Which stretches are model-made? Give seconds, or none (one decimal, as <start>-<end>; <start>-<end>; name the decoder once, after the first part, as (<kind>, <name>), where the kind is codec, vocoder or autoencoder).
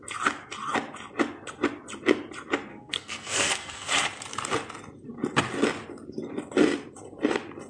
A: 2.7-3.9 (codec, SNAC)